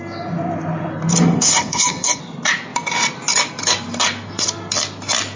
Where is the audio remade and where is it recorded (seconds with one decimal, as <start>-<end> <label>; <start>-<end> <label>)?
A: 0.0-1.2 recorded; 1.2-2.2 remade; 2.2-5.4 recorded

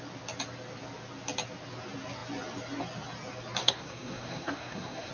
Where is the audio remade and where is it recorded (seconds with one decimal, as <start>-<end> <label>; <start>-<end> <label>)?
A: 0.0-3.6 recorded; 3.6-5.1 remade

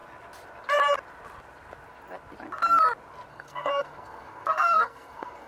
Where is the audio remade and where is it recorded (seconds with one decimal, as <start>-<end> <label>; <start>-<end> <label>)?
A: 0.0-3.3 recorded; 3.3-5.5 remade

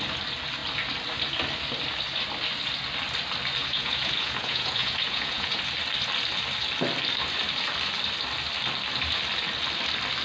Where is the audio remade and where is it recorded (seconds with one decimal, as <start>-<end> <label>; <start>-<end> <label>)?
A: 0.0-3.6 recorded; 3.6-5.6 remade; 5.6-10.2 recorded

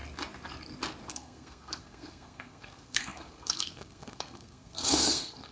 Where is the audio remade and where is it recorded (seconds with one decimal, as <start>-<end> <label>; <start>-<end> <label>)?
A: 0.0-1.1 recorded; 1.1-5.5 remade